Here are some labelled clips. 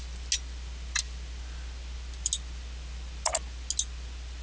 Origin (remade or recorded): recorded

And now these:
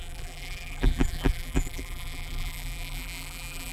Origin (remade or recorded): remade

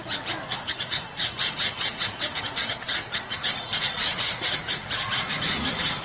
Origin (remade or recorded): remade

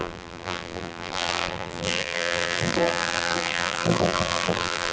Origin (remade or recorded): remade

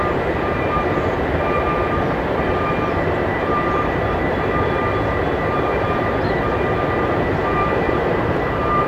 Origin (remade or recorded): remade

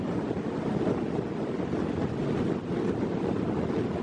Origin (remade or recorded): recorded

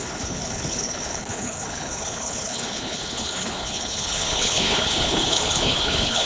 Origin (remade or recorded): remade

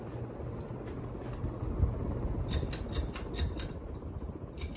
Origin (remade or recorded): recorded